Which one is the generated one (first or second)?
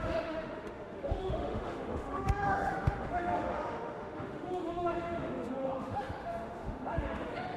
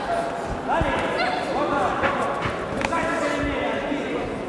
first